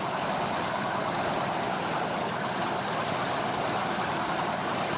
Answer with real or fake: real